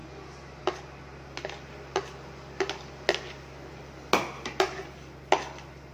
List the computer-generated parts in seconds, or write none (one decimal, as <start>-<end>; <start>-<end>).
none